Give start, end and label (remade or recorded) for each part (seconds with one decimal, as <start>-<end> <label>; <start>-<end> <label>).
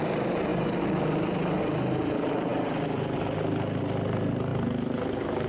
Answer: 0.0-5.5 recorded